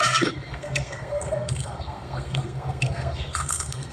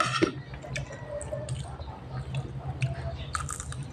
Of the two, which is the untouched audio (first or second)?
second